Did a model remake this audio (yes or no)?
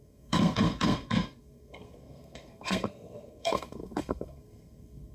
yes